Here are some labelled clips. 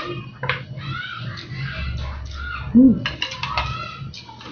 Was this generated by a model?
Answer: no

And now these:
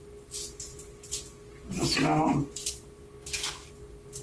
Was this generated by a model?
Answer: no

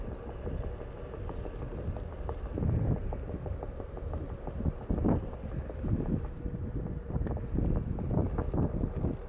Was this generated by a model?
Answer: no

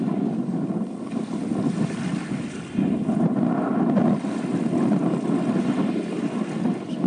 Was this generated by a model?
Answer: no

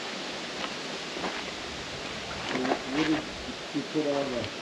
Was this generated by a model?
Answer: no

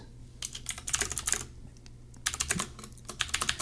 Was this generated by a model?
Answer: no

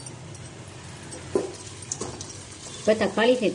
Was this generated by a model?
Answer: yes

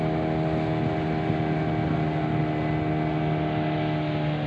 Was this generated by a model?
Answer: no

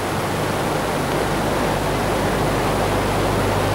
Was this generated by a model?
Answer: no